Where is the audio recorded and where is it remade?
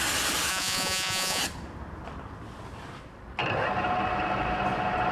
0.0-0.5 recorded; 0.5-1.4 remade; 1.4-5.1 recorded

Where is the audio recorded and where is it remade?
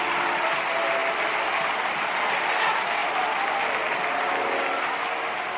0.0-5.6 recorded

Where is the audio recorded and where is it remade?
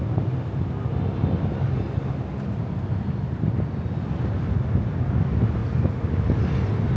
0.0-7.0 recorded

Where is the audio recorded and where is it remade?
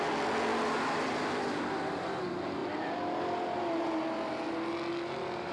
0.0-5.5 recorded